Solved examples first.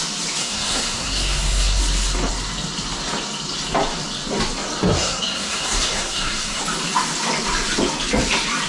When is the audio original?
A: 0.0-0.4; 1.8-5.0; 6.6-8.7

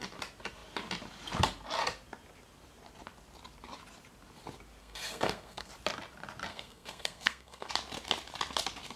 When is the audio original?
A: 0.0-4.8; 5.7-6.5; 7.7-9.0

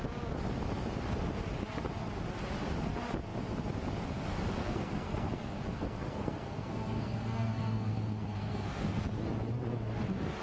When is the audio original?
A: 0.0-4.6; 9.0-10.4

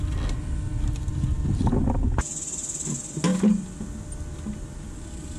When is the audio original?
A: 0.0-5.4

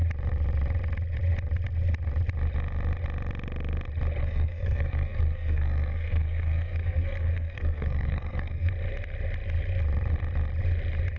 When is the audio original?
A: 0.0-4.2; 8.7-11.2

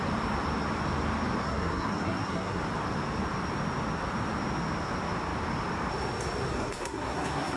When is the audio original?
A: 0.0-1.4; 2.6-6.5

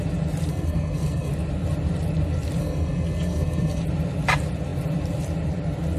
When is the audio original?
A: 0.0-0.5; 1.3-2.6; 3.8-6.0

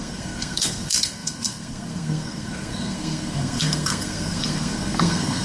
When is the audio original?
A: none